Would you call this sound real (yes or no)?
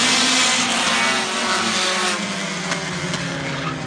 yes